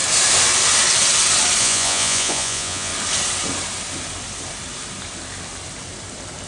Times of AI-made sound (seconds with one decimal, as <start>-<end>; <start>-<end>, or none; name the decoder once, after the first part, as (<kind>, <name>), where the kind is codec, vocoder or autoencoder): 1.6-2.9 (vocoder, Vocos)